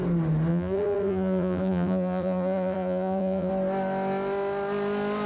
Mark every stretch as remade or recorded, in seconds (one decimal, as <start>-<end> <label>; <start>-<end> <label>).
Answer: 0.0-0.5 recorded; 0.5-3.5 remade; 3.5-5.3 recorded